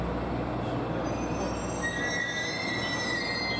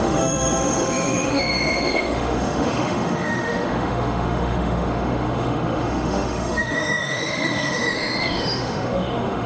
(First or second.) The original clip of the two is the first